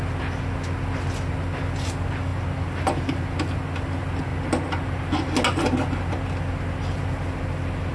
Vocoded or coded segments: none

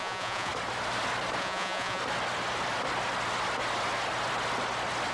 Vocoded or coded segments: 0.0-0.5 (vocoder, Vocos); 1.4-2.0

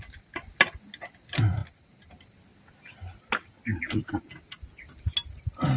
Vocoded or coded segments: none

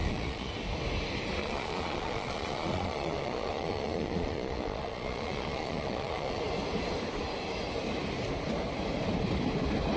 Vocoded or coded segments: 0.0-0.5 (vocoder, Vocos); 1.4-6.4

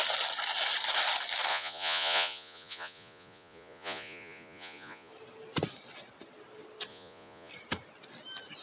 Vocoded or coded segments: 1.5-5.1 (vocoder, Vocos); 6.9-7.5

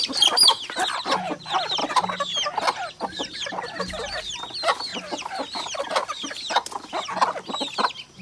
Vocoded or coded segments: none